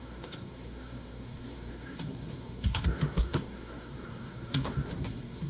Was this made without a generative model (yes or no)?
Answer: no